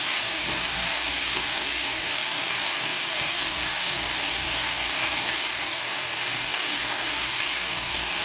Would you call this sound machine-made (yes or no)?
yes